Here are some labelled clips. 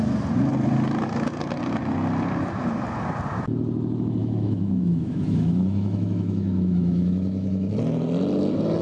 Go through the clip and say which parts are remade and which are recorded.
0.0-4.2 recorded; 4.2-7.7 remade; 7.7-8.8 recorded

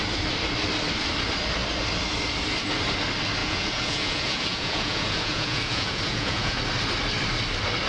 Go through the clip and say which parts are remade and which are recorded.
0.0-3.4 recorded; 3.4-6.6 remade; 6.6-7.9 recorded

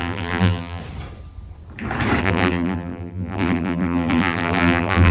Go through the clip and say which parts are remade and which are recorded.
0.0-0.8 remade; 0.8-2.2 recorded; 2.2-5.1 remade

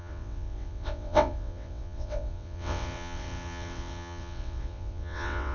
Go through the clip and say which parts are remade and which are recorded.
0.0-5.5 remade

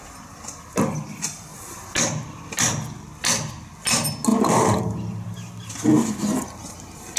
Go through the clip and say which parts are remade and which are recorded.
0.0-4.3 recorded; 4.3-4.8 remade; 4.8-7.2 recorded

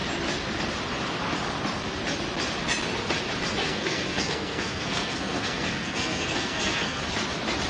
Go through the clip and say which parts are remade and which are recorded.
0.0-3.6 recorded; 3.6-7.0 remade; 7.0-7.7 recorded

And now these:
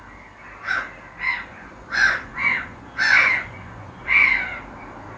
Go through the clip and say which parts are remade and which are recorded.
0.0-1.5 recorded; 1.5-4.6 remade; 4.6-5.2 recorded

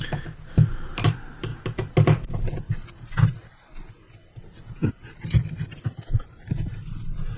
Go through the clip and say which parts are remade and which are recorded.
0.0-7.4 remade